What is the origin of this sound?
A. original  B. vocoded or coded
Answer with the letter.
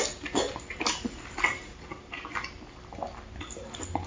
A